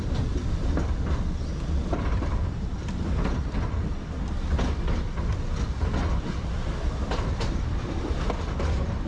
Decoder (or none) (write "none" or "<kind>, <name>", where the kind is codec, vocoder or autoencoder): none